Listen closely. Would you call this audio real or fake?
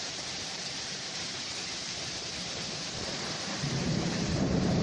fake